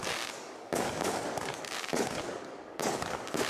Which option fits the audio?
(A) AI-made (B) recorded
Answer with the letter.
A